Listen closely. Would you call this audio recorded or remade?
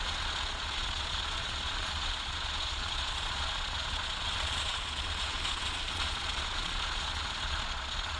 remade